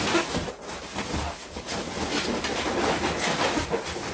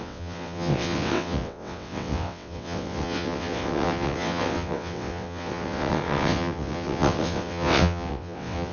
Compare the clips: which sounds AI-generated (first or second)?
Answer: second